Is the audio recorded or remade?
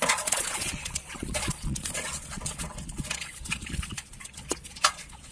remade